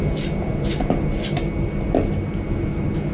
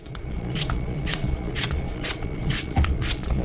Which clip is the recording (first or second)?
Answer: first